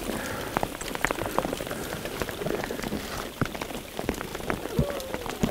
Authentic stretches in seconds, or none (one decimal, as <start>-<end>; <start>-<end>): 0.0-4.3; 5.1-5.5